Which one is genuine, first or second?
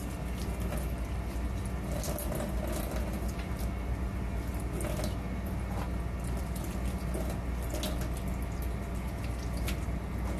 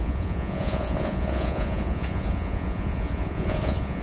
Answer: first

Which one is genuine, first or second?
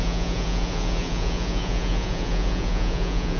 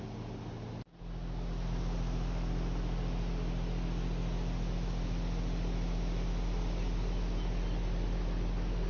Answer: second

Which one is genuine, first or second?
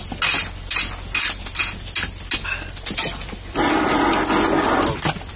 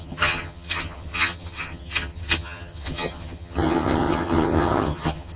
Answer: first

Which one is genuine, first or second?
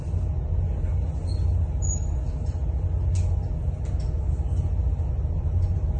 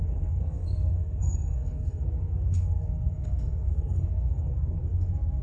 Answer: first